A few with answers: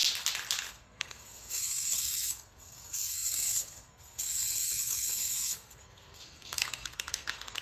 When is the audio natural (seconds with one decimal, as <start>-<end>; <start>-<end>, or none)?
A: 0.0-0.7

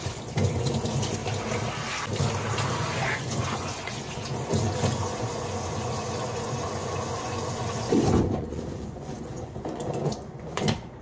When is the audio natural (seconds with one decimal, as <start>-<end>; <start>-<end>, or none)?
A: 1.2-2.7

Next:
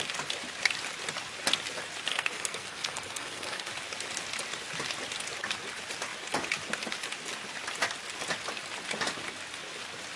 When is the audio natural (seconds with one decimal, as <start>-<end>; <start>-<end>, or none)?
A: 0.0-2.1; 3.7-10.2

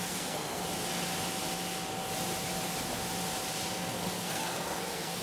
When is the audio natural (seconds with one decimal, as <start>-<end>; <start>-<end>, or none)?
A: 0.6-3.7

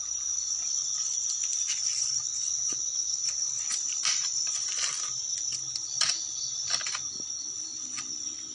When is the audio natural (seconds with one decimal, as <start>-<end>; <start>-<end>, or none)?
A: 0.0-8.5

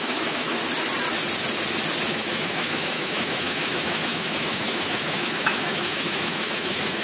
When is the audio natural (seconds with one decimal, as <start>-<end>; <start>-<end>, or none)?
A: 0.6-2.1